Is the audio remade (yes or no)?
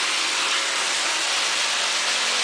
no